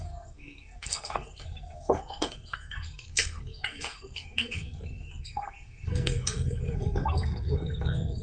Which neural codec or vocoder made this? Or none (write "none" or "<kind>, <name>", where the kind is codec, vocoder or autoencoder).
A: codec, SNAC